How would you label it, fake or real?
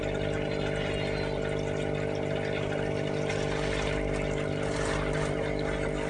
real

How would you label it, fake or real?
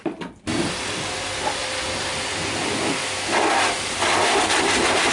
real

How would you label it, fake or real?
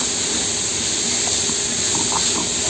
real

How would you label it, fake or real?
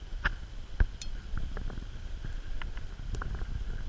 real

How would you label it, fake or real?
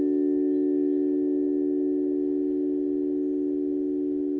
real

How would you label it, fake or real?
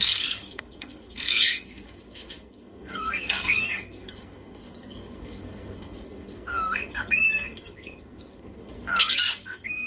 fake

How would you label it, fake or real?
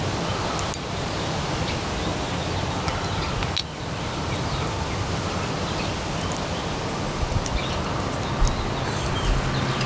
real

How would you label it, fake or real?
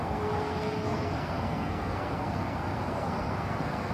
fake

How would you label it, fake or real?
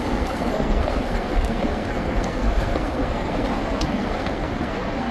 fake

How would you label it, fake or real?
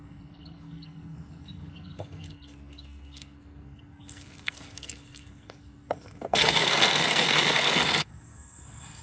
fake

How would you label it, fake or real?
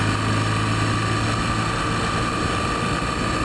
real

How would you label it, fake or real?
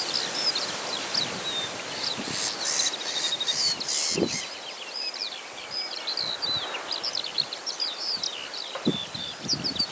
real